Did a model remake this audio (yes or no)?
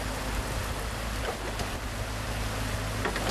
no